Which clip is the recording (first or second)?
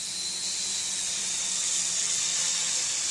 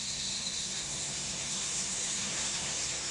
first